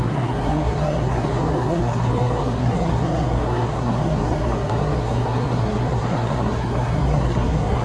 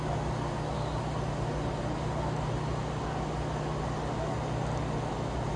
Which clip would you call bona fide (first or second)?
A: second